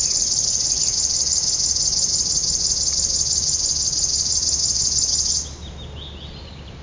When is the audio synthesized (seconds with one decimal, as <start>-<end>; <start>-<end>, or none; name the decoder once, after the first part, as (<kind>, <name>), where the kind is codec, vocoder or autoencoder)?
none